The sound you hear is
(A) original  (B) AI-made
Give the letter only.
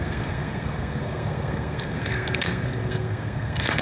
B